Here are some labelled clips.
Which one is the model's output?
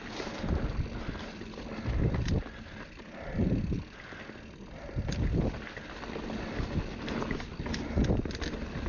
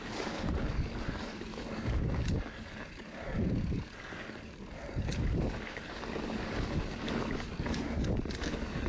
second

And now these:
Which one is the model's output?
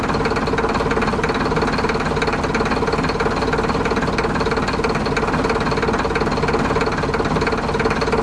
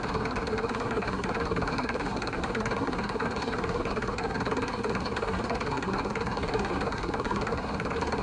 second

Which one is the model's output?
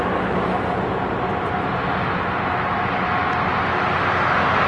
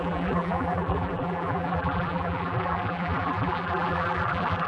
second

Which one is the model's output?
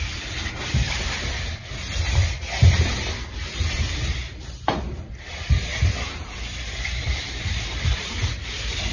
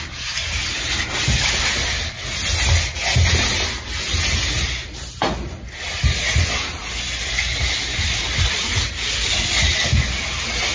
first